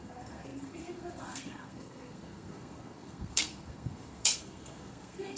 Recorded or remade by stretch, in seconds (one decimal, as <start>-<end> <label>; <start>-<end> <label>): 0.0-5.4 remade